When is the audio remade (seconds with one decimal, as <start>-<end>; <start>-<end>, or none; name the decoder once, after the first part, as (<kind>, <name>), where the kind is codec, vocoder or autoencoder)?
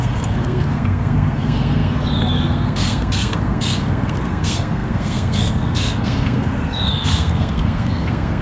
0.0-8.4 (codec, SNAC)